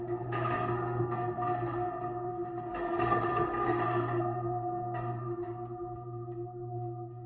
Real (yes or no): no